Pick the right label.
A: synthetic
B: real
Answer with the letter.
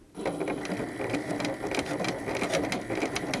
B